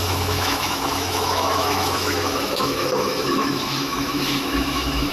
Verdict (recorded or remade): remade